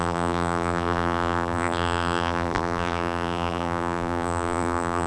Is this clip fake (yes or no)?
yes